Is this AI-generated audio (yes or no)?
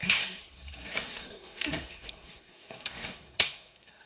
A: yes